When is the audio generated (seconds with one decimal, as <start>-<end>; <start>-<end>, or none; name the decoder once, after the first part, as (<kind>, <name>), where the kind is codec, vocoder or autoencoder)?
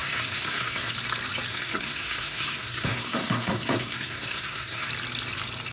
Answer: 0.0-0.9 (codec, SNAC); 1.5-4.9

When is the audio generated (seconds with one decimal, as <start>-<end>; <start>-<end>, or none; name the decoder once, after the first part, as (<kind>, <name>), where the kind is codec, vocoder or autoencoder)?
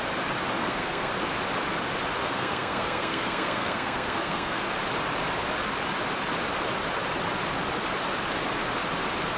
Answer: 0.6-1.1 (codec, SNAC); 2.2-4.6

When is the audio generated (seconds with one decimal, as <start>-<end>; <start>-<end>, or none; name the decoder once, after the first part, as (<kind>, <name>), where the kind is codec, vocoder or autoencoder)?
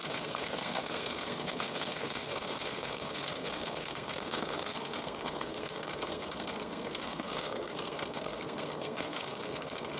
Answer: 0.0-10.0 (codec, SNAC)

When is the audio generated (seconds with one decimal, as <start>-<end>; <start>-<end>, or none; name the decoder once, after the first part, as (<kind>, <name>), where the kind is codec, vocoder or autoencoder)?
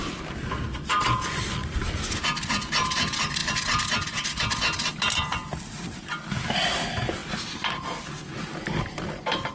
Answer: none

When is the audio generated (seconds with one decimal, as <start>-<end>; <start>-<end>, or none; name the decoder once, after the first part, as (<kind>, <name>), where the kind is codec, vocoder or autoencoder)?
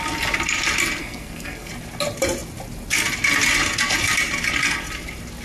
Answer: 1.0-1.7 (codec, SNAC)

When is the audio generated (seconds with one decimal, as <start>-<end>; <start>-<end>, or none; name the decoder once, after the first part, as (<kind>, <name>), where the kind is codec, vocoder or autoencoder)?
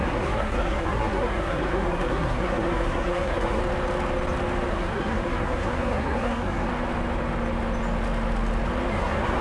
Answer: 0.0-3.6 (codec, SNAC); 4.7-6.7; 8.9-9.4